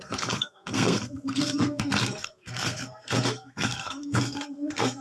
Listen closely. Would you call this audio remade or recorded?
remade